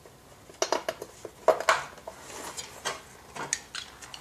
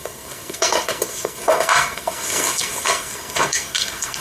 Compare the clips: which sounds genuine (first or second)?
first